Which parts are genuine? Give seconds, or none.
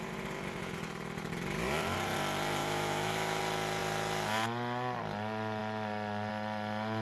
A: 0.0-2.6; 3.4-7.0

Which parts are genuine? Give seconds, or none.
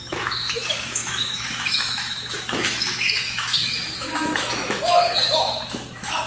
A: none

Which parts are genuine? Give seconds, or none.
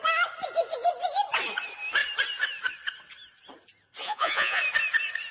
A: 0.0-4.0; 4.6-5.3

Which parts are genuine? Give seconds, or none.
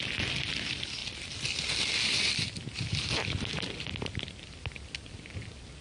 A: 0.0-5.8